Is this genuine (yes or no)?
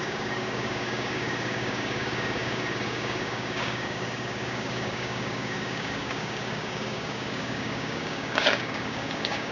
no